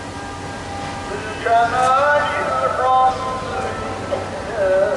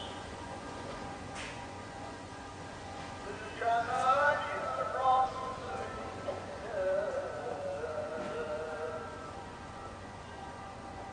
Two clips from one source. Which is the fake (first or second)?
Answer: second